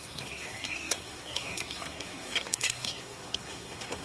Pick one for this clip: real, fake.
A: fake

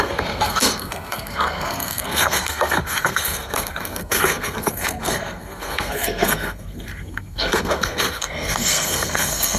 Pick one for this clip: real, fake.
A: fake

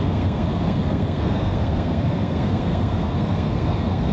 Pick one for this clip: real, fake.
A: fake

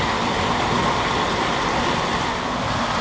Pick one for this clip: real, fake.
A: real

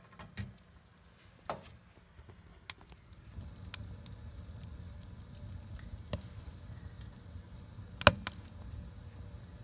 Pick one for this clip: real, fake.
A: real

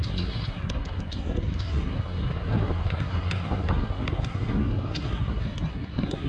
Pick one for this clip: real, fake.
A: fake